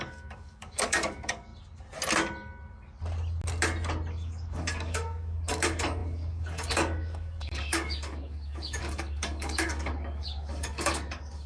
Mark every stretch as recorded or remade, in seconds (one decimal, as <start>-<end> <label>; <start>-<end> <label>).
0.0-1.5 remade; 1.5-4.1 recorded; 4.1-11.5 remade